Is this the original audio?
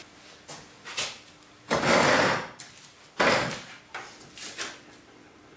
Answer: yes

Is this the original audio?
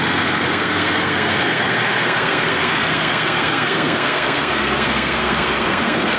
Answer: no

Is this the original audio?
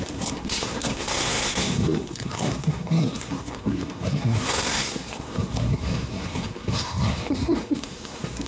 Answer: no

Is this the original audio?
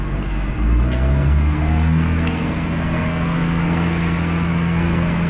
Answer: no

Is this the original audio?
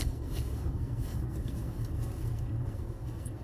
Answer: no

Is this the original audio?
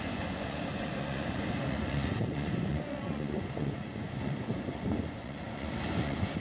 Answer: no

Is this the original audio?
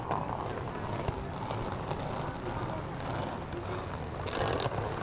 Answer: yes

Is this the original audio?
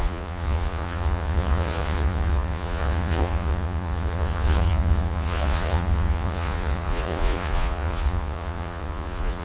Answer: no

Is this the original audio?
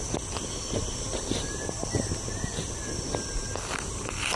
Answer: yes